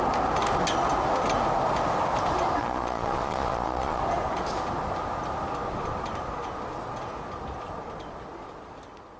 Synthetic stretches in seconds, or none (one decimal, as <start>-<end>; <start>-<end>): 2.6-4.0